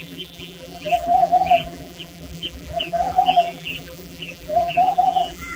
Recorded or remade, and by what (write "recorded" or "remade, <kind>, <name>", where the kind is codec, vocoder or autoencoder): remade, vocoder, BigVGAN v2